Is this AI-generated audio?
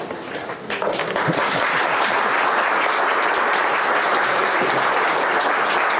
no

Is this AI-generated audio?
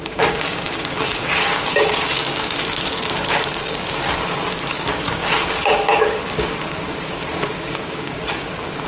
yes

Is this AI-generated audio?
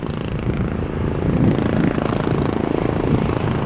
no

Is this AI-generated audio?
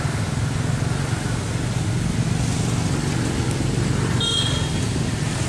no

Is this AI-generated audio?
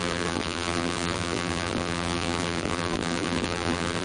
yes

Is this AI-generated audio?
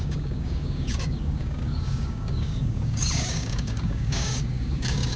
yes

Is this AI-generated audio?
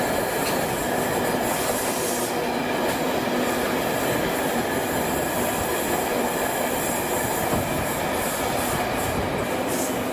no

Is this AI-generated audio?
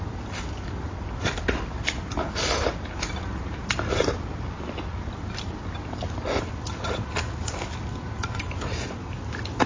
no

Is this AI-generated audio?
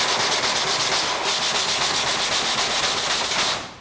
no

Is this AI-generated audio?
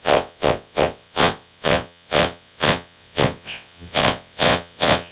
yes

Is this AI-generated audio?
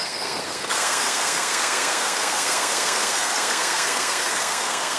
yes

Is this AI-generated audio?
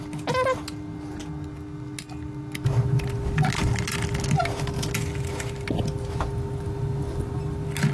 no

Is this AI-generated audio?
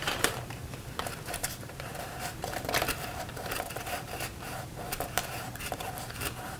yes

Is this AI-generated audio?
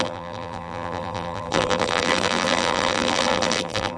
yes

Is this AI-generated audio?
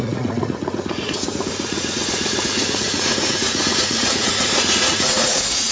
yes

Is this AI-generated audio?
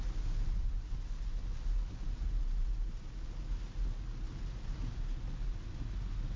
no